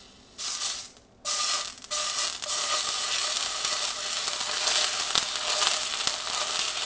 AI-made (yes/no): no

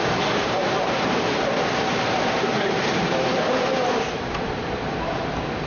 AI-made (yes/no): yes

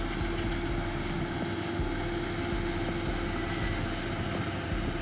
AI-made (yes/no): no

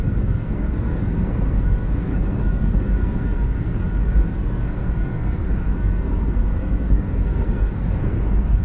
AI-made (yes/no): yes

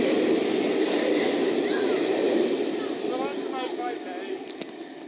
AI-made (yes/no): no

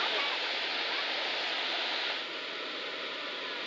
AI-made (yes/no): no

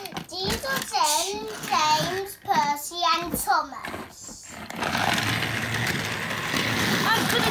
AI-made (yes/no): no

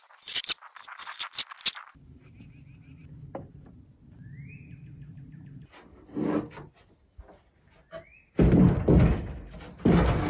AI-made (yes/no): no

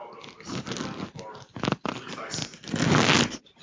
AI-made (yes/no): no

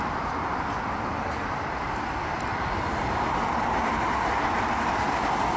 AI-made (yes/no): no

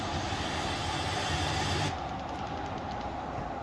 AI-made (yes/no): no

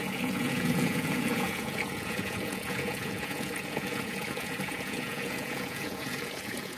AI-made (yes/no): yes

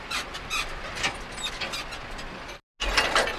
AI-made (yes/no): no